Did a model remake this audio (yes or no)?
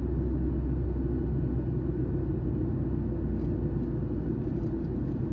no